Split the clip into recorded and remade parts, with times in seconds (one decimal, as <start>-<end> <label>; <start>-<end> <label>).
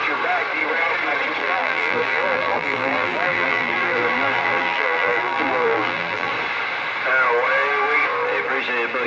0.0-1.4 recorded; 1.4-6.3 remade; 6.3-9.1 recorded